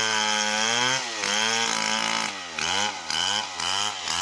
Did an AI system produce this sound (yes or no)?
no